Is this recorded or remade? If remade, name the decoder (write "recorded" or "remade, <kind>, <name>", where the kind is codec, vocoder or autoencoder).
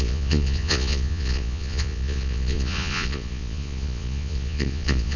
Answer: remade, vocoder, Vocos